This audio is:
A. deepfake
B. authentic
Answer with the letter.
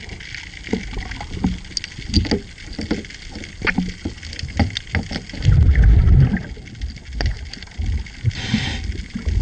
B